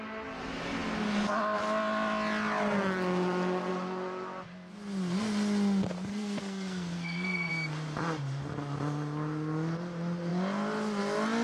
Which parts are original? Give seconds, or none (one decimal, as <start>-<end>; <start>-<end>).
0.0-6.1; 7.5-11.4